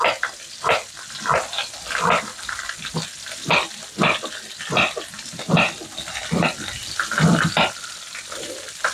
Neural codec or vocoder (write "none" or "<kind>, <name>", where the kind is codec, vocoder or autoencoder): none